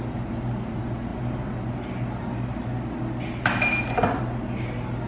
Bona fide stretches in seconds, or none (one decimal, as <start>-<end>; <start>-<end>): 0.0-5.1